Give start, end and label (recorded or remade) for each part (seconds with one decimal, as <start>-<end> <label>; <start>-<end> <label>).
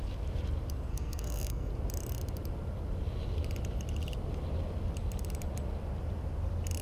0.0-0.9 recorded; 0.9-1.7 remade; 1.7-6.8 recorded